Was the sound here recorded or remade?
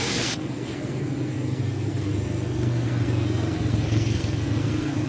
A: remade